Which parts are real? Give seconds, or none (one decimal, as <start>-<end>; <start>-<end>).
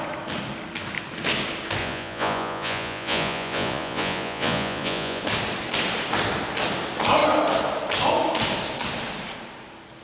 0.0-1.8; 5.2-10.0